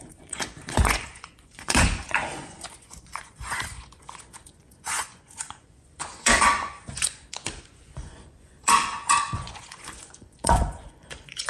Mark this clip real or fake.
fake